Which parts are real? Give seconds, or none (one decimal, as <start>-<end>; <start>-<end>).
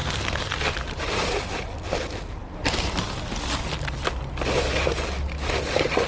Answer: 0.0-6.1